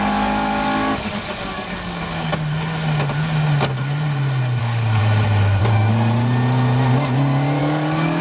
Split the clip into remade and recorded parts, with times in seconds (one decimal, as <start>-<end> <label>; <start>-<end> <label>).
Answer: 0.0-2.3 remade; 2.3-4.6 recorded; 4.6-5.0 remade; 5.0-7.6 recorded; 7.6-8.2 remade